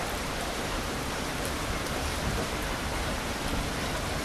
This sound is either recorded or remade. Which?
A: remade